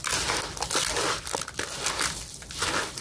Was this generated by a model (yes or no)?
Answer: no